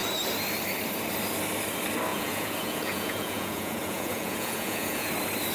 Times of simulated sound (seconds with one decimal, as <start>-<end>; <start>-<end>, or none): 2.1-5.1